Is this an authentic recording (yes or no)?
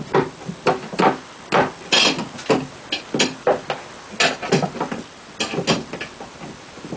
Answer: yes